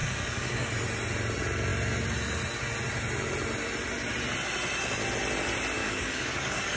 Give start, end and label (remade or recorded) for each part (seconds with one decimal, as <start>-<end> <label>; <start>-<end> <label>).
0.0-0.7 remade; 0.7-5.8 recorded; 5.8-6.8 remade